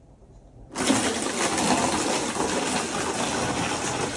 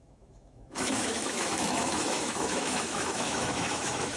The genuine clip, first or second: first